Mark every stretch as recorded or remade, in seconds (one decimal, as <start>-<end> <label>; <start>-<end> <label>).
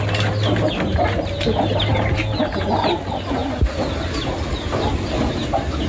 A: 0.0-5.9 recorded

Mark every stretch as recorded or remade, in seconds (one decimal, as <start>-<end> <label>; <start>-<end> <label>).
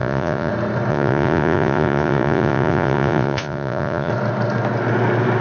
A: 0.0-0.5 remade; 0.5-0.9 recorded; 0.9-4.1 remade; 4.1-5.4 recorded